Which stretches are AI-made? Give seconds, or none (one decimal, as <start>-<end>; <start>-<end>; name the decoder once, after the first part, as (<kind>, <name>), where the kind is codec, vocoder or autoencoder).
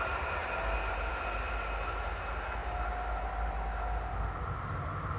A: none